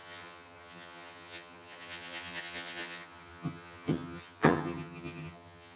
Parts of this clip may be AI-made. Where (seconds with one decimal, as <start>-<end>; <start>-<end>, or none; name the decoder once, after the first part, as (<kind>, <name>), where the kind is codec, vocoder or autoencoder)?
0.0-5.8 (vocoder, HiFi-GAN)